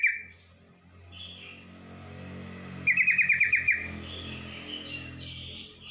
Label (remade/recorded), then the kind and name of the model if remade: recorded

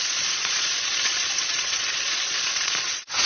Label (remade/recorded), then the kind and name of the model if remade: remade, vocoder, Vocos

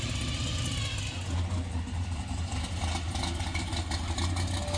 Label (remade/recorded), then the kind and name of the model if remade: recorded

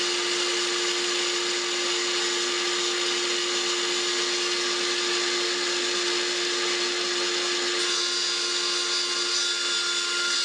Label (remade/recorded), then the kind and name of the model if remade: recorded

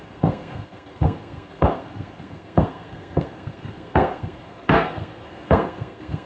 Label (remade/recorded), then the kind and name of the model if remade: remade, codec, SNAC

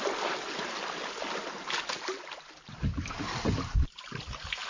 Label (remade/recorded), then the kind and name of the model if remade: recorded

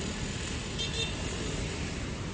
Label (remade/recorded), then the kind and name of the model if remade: recorded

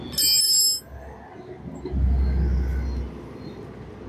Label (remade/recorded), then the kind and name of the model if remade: recorded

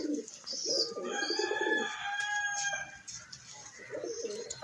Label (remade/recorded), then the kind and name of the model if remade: recorded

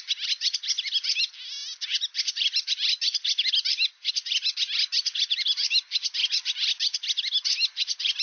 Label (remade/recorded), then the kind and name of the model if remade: recorded